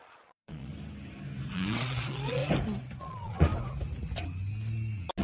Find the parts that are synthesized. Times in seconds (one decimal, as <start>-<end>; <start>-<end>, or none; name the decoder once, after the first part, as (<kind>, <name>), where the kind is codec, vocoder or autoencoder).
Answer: 0.0-0.7 (vocoder, Vocos); 1.5-2.4; 3.0-3.5